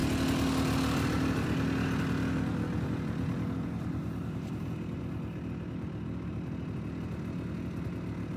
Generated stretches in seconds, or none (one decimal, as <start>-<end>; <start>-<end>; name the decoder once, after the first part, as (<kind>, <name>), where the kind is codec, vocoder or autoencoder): none